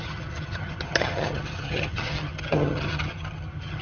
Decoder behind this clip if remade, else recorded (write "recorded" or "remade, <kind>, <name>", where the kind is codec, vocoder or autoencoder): remade, vocoder, HiFi-GAN